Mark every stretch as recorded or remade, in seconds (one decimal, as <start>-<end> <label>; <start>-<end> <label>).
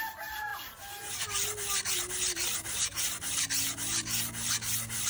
0.0-5.1 recorded